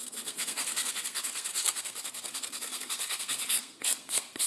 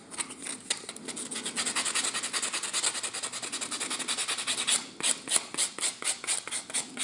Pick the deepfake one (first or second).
first